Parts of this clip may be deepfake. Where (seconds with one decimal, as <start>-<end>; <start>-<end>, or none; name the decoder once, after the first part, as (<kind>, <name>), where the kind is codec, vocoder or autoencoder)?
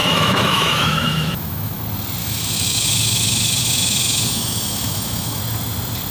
0.0-1.8 (autoencoder, DAC-VAE); 2.2-5.4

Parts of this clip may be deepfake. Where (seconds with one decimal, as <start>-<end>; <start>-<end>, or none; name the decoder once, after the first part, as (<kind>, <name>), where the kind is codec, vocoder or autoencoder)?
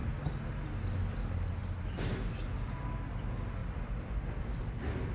3.6-4.6 (vocoder, BigVGAN v2)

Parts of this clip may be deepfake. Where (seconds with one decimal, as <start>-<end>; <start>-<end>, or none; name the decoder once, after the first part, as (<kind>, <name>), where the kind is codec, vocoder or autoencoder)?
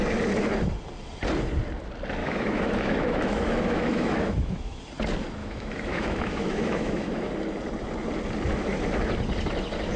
2.2-4.8 (autoencoder, DAC-VAE); 5.4-7.3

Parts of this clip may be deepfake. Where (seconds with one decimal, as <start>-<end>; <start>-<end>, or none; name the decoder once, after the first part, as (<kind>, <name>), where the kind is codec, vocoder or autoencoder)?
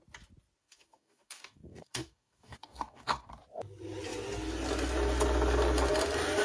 0.6-3.3 (codec, DAC)